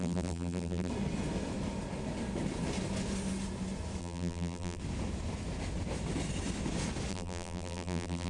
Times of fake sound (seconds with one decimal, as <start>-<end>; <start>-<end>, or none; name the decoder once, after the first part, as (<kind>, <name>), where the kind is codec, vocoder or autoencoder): 0.0-0.9 (vocoder, BigVGAN v2); 4.0-4.8; 7.1-8.3